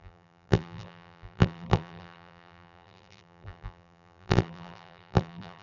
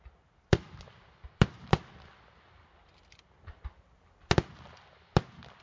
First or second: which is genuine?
second